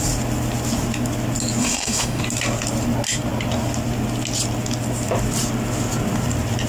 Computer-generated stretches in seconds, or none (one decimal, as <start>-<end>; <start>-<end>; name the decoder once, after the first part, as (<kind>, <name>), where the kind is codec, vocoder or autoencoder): 1.6-2.2 (autoencoder, DAC-VAE)